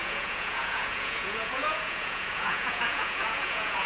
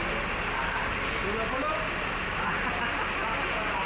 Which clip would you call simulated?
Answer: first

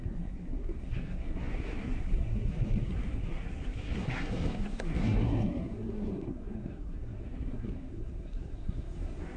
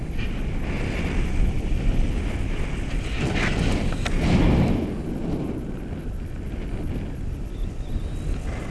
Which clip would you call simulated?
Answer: first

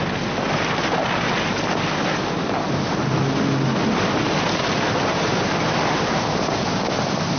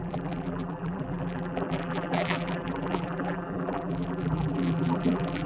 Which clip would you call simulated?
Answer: second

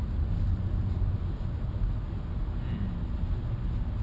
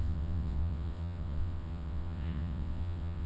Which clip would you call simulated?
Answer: second